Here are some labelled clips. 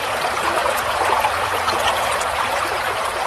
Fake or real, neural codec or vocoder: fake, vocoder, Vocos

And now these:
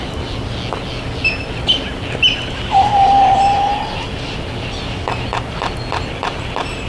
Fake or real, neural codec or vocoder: real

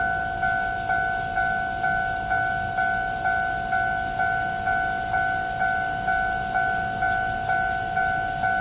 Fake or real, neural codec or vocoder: real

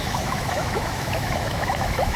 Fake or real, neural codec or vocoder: fake, autoencoder, DAC-VAE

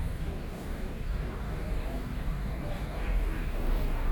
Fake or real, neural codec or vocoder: fake, codec, DAC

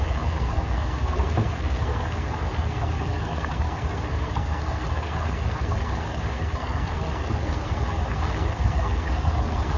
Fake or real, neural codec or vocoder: fake, codec, SNAC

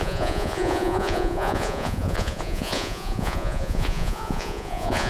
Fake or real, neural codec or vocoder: fake, vocoder, Vocos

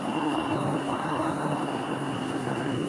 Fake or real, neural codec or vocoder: fake, codec, SNAC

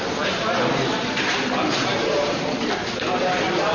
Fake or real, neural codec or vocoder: real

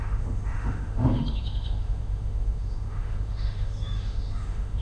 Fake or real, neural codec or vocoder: fake, autoencoder, DAC-VAE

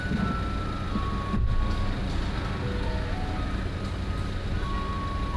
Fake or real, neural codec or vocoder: real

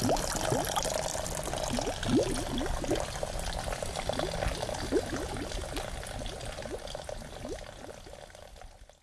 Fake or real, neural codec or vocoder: real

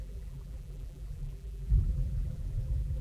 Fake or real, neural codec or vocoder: fake, vocoder, BigVGAN v2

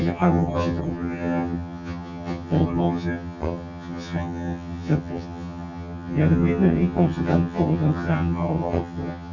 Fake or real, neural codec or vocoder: fake, vocoder, HiFi-GAN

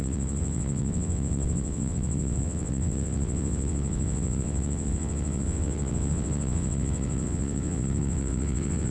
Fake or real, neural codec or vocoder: fake, vocoder, WaveNeXt